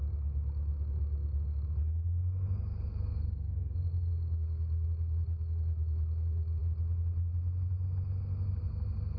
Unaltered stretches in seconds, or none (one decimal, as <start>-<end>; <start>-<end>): 6.6-9.2